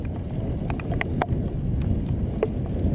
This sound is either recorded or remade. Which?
recorded